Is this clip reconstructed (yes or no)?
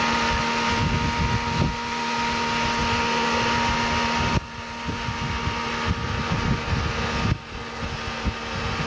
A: no